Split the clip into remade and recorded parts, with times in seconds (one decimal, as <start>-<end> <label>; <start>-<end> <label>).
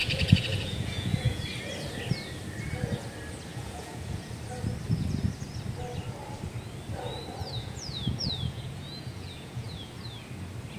0.0-1.4 remade; 1.4-3.5 recorded; 3.5-4.3 remade; 4.3-7.4 recorded; 7.4-9.9 remade; 9.9-10.8 recorded